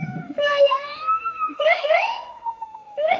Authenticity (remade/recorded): remade